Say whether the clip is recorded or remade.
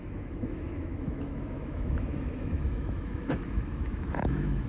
remade